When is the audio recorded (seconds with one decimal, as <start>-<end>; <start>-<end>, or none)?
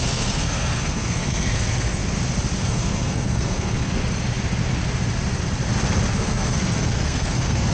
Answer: 2.0-2.6; 4.0-6.1